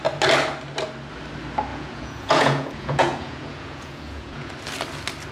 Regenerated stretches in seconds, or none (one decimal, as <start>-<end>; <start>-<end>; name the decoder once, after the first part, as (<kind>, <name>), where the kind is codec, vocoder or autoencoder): 1.7-4.5 (vocoder, Vocos)